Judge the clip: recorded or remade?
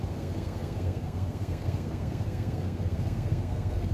remade